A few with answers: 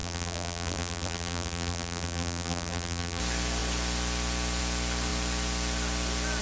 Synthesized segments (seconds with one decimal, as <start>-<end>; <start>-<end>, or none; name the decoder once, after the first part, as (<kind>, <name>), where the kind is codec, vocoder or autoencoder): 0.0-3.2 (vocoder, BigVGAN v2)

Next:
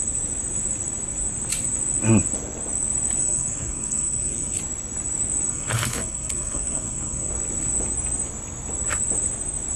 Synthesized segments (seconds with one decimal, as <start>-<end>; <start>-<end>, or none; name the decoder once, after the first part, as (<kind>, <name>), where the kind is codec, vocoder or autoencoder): 3.2-4.6 (codec, SNAC); 5.5-7.3

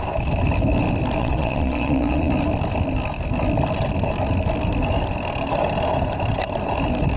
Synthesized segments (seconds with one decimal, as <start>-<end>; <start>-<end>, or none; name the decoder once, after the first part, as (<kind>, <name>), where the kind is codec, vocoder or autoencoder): 1.2-2.3 (vocoder, Vocos)

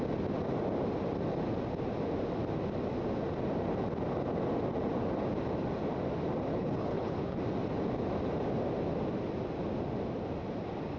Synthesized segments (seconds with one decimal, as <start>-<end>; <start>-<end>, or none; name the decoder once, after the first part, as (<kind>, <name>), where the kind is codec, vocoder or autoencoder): 6.5-7.4 (codec, HILCodec)

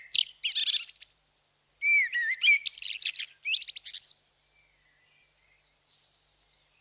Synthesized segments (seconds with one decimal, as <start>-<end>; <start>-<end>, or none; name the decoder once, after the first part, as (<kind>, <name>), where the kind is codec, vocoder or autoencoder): none

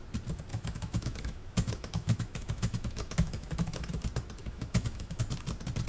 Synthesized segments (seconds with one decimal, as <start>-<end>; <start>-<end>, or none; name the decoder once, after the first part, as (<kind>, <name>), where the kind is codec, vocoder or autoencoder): 0.5-4.0 (autoencoder, DAC-VAE); 4.4-5.2

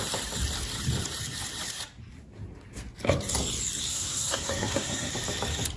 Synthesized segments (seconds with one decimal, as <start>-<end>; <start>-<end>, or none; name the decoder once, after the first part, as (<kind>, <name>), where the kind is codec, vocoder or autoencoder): 3.9-5.1 (codec, SNAC)

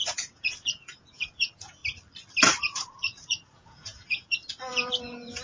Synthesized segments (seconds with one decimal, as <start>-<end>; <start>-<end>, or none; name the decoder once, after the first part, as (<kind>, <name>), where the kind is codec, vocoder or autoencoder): 0.0-1.8 (vocoder, Vocos); 2.6-5.4